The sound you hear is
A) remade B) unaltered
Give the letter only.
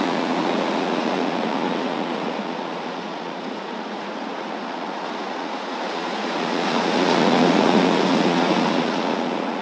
A